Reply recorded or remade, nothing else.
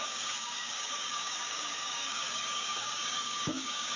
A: remade